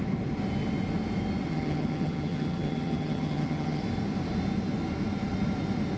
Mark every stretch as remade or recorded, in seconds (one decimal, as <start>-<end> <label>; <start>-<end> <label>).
0.0-1.5 recorded; 1.5-3.8 remade; 3.8-6.0 recorded